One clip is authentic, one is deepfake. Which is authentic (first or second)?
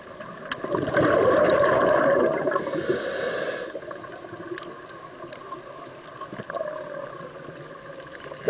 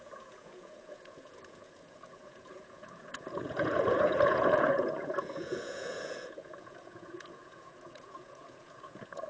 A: first